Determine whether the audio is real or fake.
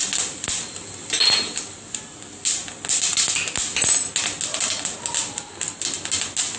real